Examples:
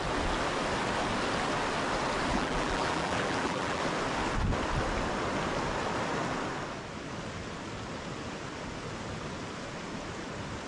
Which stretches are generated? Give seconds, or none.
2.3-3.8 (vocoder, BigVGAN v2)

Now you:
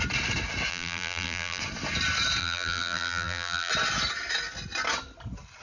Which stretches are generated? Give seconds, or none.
0.7-1.6 (vocoder, BigVGAN v2); 2.4-3.7